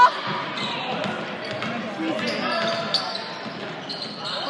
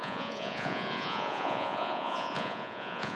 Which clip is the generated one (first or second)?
second